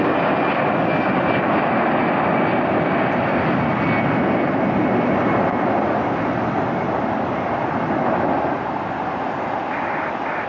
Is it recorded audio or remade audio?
recorded